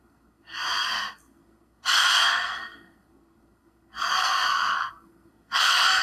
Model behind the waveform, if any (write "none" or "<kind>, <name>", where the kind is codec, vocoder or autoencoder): codec, SNAC